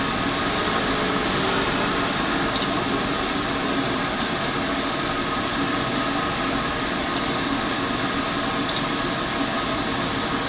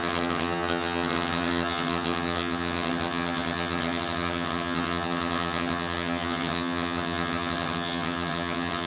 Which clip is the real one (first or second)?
first